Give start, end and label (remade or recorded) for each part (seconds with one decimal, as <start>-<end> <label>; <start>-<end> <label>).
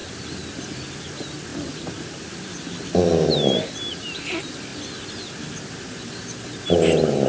0.0-0.8 remade; 0.8-1.5 recorded; 1.5-2.5 remade; 2.5-4.7 recorded; 4.7-5.5 remade; 5.5-7.3 recorded